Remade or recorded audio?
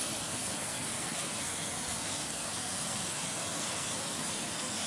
remade